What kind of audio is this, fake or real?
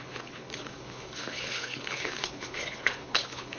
fake